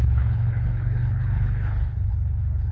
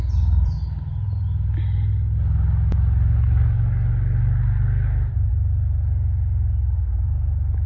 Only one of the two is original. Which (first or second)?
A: second